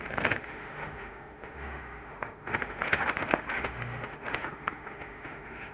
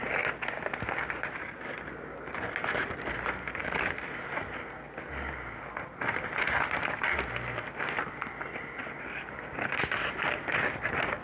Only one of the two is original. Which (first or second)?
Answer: second